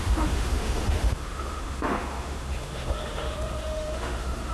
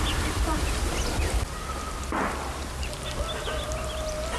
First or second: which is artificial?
first